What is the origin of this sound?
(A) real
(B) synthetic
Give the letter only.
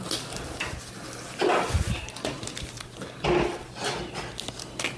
A